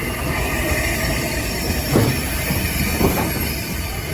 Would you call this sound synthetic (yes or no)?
no